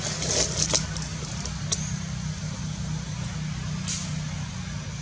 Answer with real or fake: real